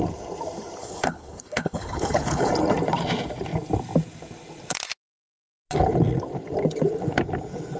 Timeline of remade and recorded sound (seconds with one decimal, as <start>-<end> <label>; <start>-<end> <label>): 0.0-0.8 recorded; 0.8-2.5 remade; 2.5-7.8 recorded